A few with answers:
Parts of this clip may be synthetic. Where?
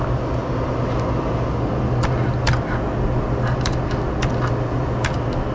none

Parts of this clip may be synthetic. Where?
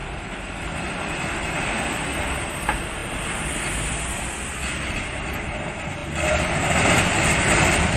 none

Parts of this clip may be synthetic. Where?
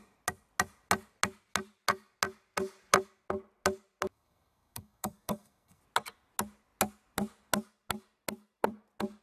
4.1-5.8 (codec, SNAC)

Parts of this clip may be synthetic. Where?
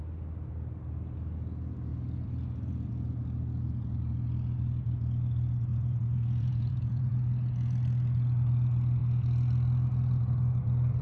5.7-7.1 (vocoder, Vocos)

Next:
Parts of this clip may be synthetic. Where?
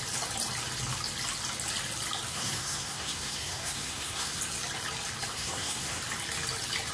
2.3-4.4 (codec, SNAC); 5.3-6.0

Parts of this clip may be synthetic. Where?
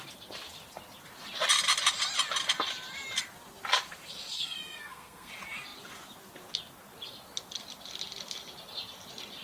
4.3-5.3 (codec, SNAC)